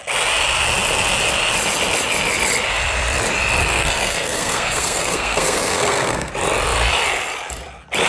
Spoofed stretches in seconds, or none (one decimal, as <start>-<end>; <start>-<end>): 3.6-6.3

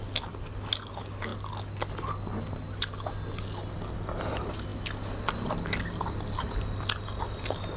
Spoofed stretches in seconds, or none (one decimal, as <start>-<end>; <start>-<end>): none

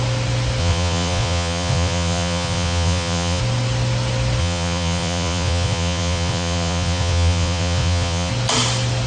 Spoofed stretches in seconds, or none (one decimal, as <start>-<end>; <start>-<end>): 0.6-3.4; 4.4-8.3

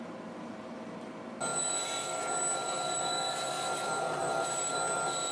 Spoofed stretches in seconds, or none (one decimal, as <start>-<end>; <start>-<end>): none

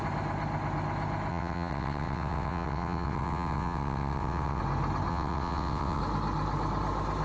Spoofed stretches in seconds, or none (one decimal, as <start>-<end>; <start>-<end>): 1.3-4.6; 5.1-6.0

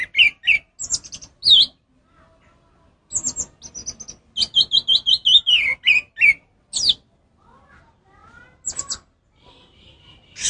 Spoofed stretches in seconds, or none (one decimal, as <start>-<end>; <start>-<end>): none